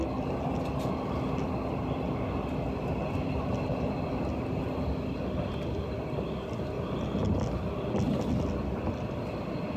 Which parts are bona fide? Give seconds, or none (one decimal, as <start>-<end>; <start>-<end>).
0.0-9.8

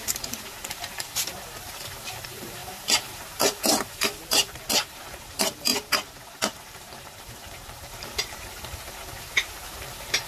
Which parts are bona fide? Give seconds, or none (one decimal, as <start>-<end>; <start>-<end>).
none

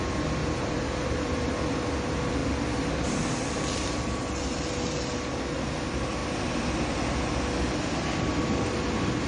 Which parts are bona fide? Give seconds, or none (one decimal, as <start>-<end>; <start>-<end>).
0.0-0.4; 1.5-9.3